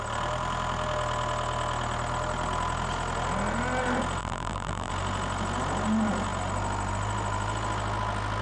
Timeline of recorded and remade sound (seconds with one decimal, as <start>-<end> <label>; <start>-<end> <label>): 0.0-4.2 recorded; 4.2-4.9 remade; 4.9-8.4 recorded

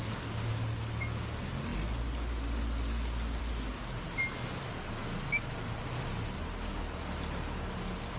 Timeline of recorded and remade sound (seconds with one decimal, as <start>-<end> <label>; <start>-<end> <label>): 0.0-8.2 recorded

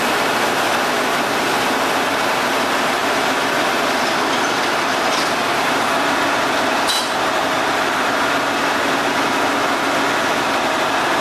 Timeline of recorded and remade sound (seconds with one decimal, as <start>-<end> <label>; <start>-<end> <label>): 0.0-11.2 recorded

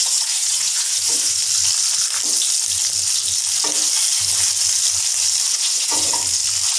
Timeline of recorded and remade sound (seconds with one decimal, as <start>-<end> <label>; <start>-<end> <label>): 0.0-1.4 remade; 1.4-5.5 recorded; 5.5-6.1 remade; 6.1-6.8 recorded